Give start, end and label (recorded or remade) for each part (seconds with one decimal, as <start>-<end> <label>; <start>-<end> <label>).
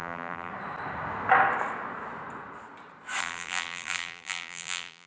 0.0-0.5 remade; 0.5-3.2 recorded; 3.2-5.1 remade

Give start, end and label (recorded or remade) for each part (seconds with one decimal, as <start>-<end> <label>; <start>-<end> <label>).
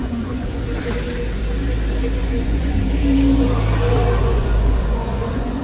0.0-0.6 remade; 0.6-2.2 recorded; 2.2-2.8 remade; 2.8-4.2 recorded; 4.2-5.6 remade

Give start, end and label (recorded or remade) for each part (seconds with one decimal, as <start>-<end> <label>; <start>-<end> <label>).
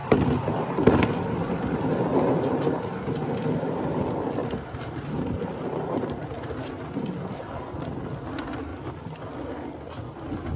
0.0-4.4 recorded; 4.4-6.5 remade; 6.5-10.6 recorded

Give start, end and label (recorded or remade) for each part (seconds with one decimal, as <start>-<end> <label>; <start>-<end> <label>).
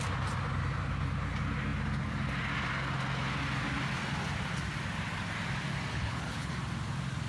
0.0-5.9 recorded; 5.9-6.5 remade; 6.5-7.3 recorded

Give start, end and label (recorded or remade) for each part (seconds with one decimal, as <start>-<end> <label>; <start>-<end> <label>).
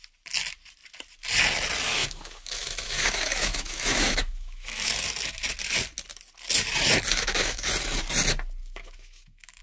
0.0-2.0 recorded; 2.0-4.9 remade; 4.9-7.1 recorded; 7.1-7.7 remade; 7.7-8.6 recorded; 8.6-9.6 remade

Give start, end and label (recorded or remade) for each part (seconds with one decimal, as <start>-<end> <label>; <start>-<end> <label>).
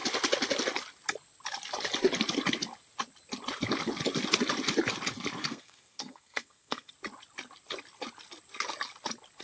0.0-5.4 recorded; 5.4-6.9 remade; 6.9-9.4 recorded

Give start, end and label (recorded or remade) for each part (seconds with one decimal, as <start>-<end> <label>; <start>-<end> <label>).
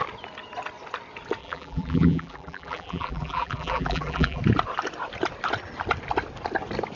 0.0-1.4 recorded; 1.4-4.4 remade; 4.4-7.0 recorded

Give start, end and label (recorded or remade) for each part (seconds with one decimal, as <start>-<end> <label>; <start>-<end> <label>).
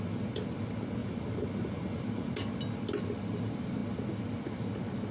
0.0-1.0 recorded; 1.0-2.3 remade; 2.3-5.1 recorded